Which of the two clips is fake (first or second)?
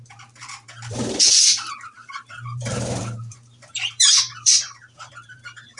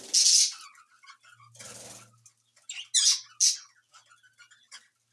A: first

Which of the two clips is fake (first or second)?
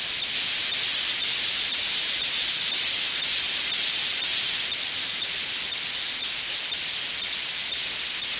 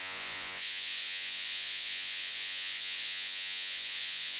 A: second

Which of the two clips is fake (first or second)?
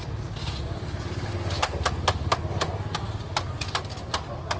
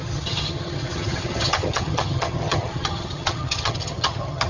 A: second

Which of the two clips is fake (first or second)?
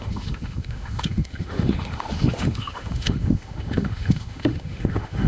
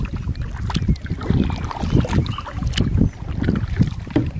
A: first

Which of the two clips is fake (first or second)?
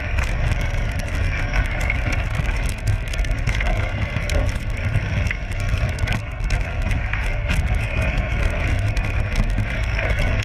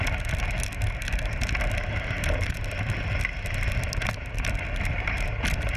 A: first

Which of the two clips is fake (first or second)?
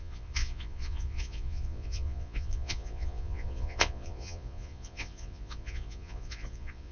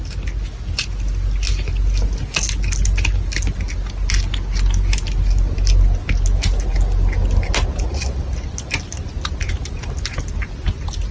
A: first